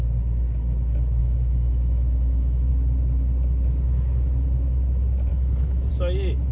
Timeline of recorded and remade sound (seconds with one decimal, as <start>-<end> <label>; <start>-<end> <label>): 0.0-1.2 recorded; 1.2-2.7 remade; 2.7-5.3 recorded; 5.3-5.9 remade; 5.9-6.5 recorded